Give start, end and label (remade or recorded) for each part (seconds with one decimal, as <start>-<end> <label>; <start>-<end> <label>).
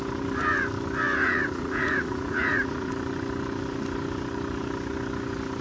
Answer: 0.0-1.2 recorded; 1.2-2.9 remade; 2.9-5.6 recorded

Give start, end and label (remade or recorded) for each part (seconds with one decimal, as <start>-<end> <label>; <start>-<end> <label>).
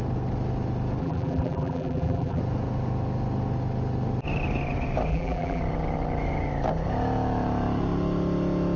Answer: 0.0-1.0 recorded; 1.0-2.4 remade; 2.4-5.1 recorded; 5.1-5.6 remade; 5.6-8.8 recorded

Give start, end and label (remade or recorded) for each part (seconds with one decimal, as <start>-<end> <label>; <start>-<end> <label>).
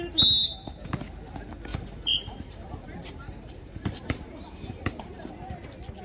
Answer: 0.0-1.7 recorded; 1.7-5.3 remade; 5.3-6.0 recorded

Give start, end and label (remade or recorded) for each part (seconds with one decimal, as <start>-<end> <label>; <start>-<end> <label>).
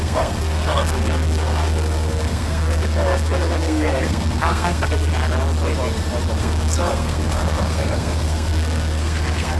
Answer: 0.0-5.1 remade; 5.1-6.4 recorded; 6.4-9.6 remade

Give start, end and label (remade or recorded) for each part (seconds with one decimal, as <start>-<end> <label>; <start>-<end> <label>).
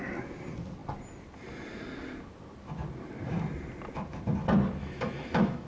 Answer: 0.0-4.8 recorded; 4.8-5.7 remade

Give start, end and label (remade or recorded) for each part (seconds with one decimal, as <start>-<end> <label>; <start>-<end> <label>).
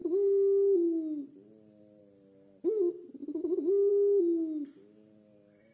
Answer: 0.0-5.7 recorded